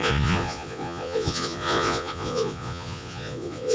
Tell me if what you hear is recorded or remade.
remade